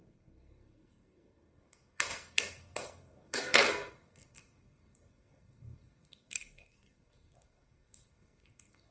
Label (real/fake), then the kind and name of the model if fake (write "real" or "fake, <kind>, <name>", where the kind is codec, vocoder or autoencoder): fake, codec, SNAC